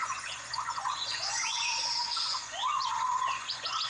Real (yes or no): no